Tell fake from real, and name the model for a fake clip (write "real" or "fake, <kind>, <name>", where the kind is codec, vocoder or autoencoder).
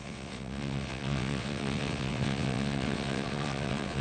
fake, vocoder, WaveNeXt